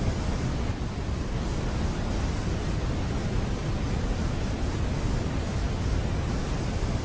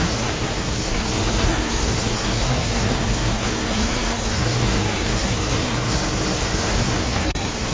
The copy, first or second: second